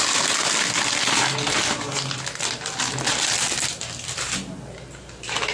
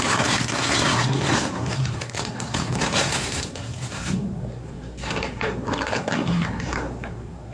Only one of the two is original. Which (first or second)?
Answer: first